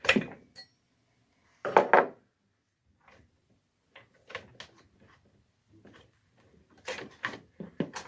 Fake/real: real